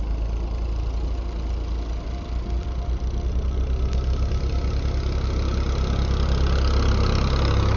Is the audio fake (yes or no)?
no